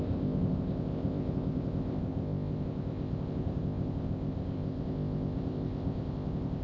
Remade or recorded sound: remade